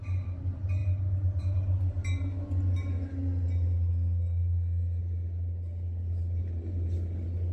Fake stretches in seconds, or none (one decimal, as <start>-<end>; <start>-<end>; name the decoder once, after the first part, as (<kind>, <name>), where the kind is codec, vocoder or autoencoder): 3.9-5.0 (codec, SNAC)